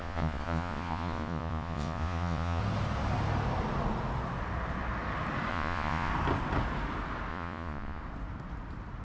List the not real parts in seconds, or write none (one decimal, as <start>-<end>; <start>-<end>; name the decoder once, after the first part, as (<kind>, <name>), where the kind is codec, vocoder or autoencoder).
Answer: 0.0-2.6 (vocoder, Vocos); 5.5-6.1; 7.3-8.0